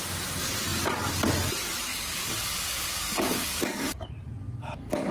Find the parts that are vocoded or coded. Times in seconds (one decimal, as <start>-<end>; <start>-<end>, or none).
1.9-4.1; 4.6-5.1

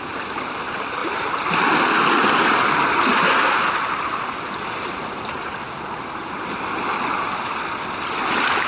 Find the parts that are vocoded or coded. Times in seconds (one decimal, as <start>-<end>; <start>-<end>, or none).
none

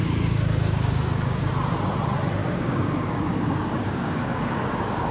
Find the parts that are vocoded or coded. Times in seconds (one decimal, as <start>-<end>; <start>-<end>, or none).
0.0-1.5; 2.4-5.1

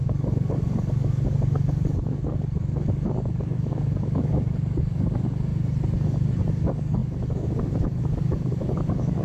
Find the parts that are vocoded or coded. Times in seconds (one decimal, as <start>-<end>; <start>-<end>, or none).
0.0-5.5; 6.5-9.2

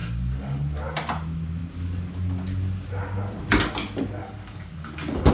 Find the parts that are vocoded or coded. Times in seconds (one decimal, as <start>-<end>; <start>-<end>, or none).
0.0-0.6; 4.2-5.3

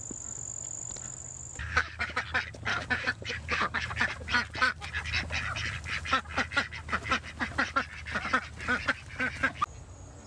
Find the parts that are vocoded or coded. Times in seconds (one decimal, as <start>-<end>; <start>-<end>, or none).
1.6-2.2; 2.7-3.9

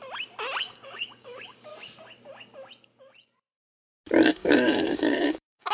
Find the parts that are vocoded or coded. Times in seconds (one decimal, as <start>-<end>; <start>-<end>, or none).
0.6-1.7; 4.3-5.7